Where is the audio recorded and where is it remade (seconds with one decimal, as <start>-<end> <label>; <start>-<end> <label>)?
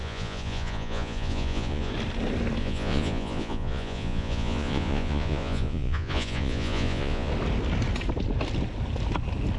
0.0-1.9 remade; 1.9-2.6 recorded; 2.6-7.3 remade; 7.3-9.6 recorded